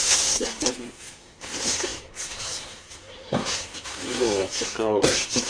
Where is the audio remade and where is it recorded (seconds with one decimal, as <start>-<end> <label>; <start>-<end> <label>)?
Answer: 0.0-5.5 remade